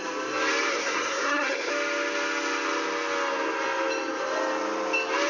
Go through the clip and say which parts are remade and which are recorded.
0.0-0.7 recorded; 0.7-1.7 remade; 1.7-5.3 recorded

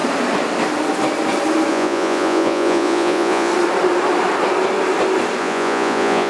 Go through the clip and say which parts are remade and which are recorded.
0.0-1.7 recorded; 1.7-3.5 remade; 3.5-5.4 recorded; 5.4-6.3 remade

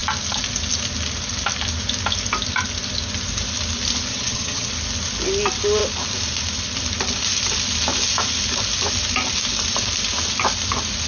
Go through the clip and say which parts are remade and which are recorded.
0.0-4.1 recorded; 4.1-4.7 remade; 4.7-11.1 recorded